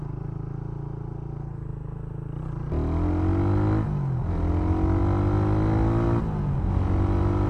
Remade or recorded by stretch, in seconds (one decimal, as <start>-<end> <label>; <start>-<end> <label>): 0.0-7.5 recorded